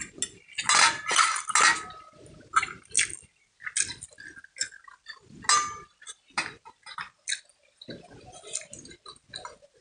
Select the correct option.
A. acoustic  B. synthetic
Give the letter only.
A